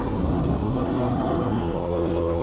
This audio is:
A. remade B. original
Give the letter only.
A